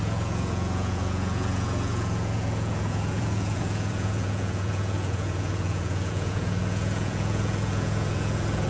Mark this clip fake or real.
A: fake